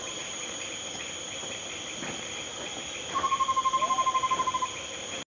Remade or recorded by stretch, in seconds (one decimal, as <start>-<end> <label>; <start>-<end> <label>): 0.0-5.3 recorded